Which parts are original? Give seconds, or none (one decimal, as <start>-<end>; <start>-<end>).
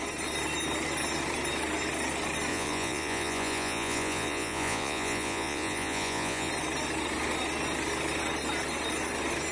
0.0-2.5; 6.5-9.5